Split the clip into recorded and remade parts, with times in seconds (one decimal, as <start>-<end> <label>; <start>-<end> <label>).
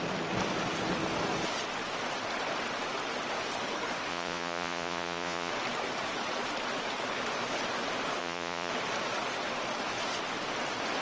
0.0-4.1 recorded; 4.1-5.5 remade; 5.5-8.2 recorded; 8.2-8.7 remade; 8.7-11.0 recorded